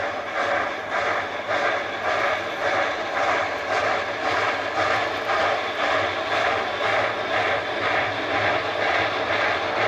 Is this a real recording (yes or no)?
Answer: yes